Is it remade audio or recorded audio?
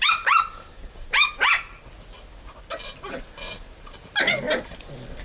recorded